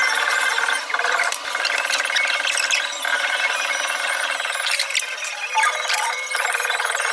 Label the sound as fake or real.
fake